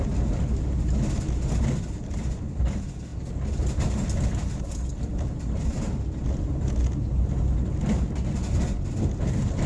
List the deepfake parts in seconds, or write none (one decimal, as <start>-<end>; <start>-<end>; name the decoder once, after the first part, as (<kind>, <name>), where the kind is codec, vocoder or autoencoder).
none